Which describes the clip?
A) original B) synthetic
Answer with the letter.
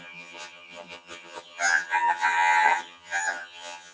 B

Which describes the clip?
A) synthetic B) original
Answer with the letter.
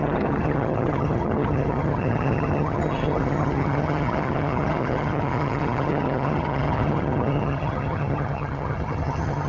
A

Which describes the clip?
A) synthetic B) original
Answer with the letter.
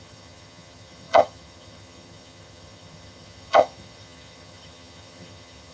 A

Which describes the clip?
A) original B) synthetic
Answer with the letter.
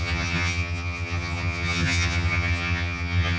B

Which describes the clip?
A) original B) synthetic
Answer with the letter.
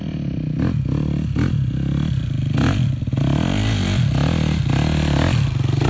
A